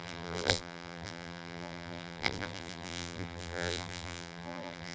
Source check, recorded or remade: remade